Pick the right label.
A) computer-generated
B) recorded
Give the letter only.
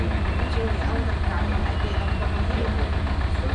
B